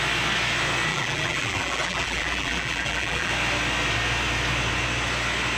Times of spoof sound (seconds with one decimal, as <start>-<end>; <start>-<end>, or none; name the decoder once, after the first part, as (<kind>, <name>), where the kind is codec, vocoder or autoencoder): 0.9-3.3 (vocoder, BigVGAN v2)